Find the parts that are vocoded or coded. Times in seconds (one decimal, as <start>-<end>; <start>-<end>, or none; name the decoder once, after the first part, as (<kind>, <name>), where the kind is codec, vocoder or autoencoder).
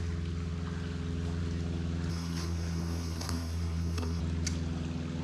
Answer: 2.1-4.2 (codec, SNAC)